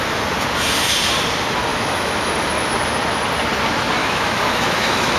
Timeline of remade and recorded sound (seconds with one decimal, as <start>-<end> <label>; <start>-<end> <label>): 0.0-1.7 recorded; 1.7-2.3 remade; 2.3-4.0 recorded; 4.0-5.2 remade